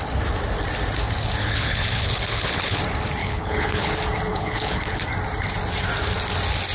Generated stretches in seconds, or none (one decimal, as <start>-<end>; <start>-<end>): 1.4-2.8; 3.2-3.9; 4.3-5.0